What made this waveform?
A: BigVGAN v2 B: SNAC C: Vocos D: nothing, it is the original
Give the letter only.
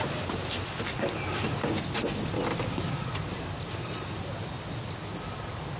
D